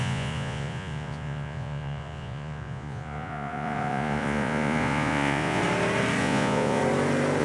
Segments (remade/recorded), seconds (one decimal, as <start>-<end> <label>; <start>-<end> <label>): 0.0-5.6 remade; 5.6-6.2 recorded; 6.2-6.8 remade; 6.8-7.4 recorded